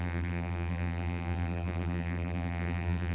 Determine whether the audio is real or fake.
fake